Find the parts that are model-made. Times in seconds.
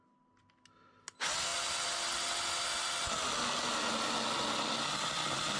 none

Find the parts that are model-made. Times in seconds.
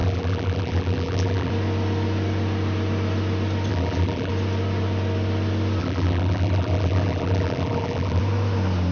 0.0-1.5 (vocoder, BigVGAN v2); 3.7-4.3; 5.8-8.2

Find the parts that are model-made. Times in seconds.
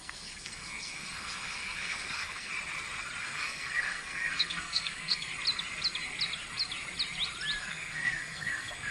0.0-2.5 (codec, SNAC); 3.2-5.3; 7.6-8.9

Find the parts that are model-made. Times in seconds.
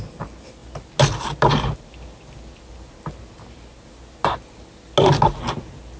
none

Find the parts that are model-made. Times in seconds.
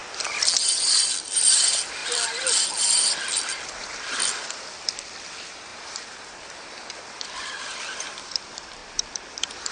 0.6-9.7 (vocoder, BigVGAN v2)